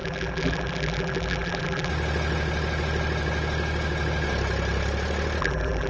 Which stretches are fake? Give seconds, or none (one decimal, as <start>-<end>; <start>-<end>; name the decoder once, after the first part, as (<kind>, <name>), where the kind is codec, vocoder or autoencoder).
0.0-1.9 (vocoder, BigVGAN v2); 5.4-5.9